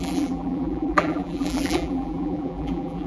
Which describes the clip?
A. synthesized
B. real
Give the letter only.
A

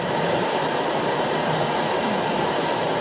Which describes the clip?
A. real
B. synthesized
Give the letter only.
B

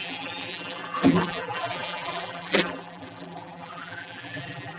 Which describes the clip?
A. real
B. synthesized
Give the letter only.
B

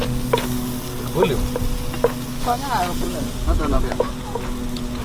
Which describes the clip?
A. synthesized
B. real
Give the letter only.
B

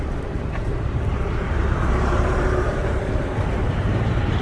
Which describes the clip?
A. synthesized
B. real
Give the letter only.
A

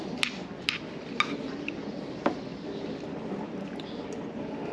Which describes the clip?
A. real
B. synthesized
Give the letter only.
B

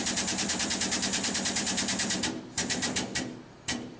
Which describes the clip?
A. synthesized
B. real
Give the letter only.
A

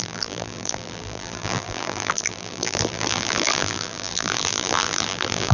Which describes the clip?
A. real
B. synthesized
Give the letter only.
B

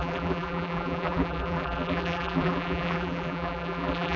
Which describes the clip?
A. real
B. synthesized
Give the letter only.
B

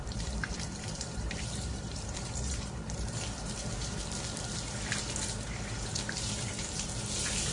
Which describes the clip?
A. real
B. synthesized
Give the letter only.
B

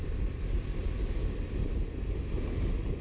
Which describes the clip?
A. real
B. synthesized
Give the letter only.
B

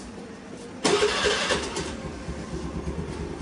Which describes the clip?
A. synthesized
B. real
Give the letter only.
A